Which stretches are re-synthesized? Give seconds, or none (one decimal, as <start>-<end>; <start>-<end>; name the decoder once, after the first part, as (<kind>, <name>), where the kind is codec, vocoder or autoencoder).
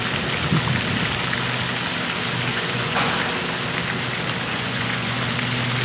2.5-3.1 (vocoder, Vocos); 4.5-5.2